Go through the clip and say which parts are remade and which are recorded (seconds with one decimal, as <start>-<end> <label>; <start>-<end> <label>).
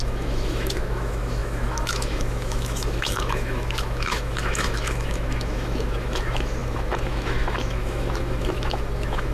0.0-9.3 remade